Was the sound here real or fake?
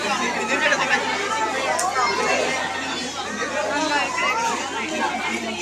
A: real